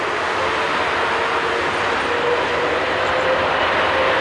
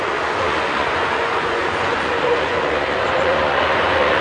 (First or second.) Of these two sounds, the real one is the first